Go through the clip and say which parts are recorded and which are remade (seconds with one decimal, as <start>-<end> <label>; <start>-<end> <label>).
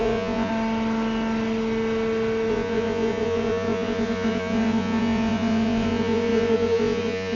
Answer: 0.0-0.5 remade; 0.5-2.5 recorded; 2.5-7.4 remade